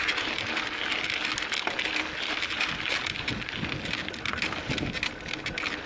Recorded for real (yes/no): yes